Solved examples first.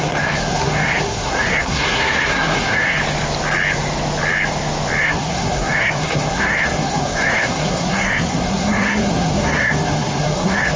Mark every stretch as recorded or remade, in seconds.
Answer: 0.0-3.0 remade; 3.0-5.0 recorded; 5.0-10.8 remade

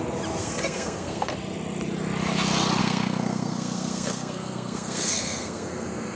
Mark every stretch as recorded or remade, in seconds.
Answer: 0.0-0.4 recorded; 0.4-1.3 remade; 1.3-2.8 recorded; 2.8-6.2 remade

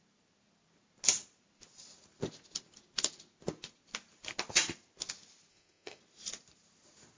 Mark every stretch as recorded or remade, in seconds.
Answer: 0.0-5.5 recorded; 5.5-6.0 remade; 6.0-7.2 recorded

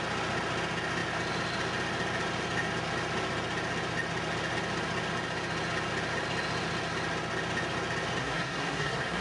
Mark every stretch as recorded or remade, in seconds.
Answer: 0.0-8.2 recorded; 8.2-9.2 remade

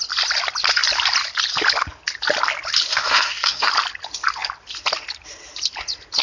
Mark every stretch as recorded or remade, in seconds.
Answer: 0.0-2.9 recorded; 2.9-3.7 remade; 3.7-6.2 recorded